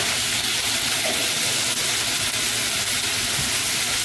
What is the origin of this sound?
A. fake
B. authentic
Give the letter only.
B